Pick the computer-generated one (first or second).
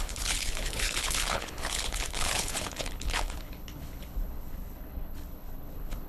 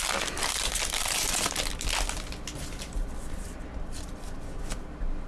first